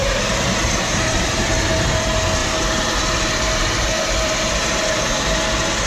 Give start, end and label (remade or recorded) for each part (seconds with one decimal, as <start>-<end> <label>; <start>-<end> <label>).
0.0-1.5 remade; 1.5-2.4 recorded; 2.4-5.2 remade; 5.2-5.9 recorded